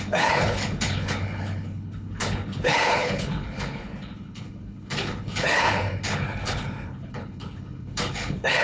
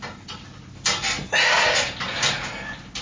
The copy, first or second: first